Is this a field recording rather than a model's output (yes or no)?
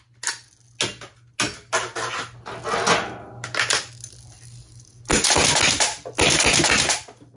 yes